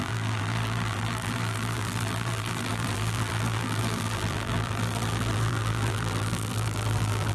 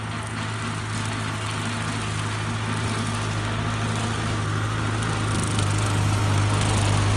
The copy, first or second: first